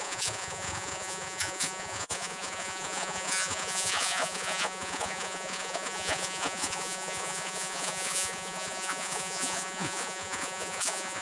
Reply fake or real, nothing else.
fake